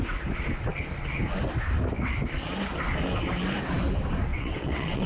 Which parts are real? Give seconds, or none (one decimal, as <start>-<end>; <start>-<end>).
0.0-4.3